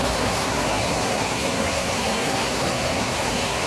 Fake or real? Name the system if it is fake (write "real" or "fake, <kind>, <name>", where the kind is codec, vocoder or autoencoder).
fake, codec, SNAC